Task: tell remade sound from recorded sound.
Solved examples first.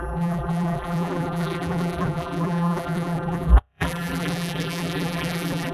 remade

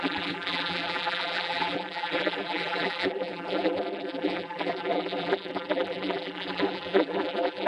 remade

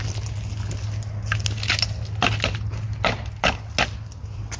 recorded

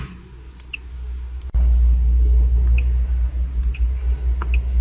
recorded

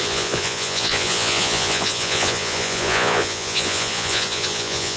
remade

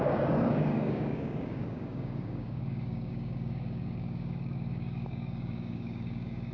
remade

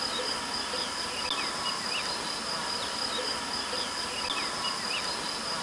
recorded